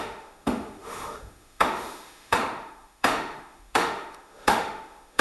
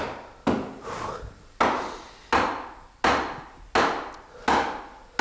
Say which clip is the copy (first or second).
first